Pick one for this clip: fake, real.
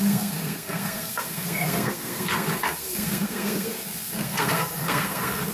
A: fake